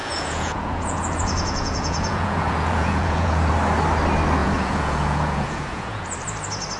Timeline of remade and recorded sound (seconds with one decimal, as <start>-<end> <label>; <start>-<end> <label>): 0.0-3.5 remade; 3.5-4.4 recorded; 4.4-6.0 remade; 6.0-6.8 recorded